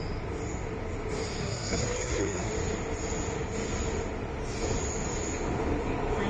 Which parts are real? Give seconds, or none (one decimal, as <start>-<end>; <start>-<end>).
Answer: 0.0-1.4; 2.5-6.3